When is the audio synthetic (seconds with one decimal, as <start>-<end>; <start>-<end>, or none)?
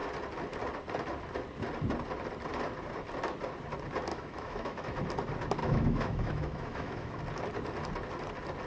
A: 4.1-5.0; 5.6-7.2